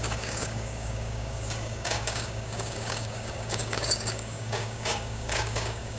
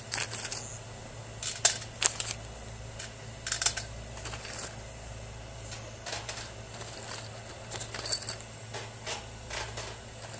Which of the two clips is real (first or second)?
second